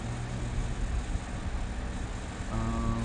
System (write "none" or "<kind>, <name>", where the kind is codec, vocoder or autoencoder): none